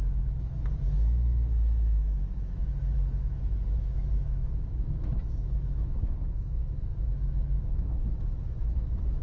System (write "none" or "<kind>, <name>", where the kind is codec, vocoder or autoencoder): autoencoder, DAC-VAE